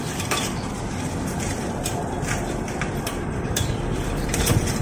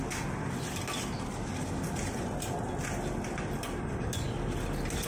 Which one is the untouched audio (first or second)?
second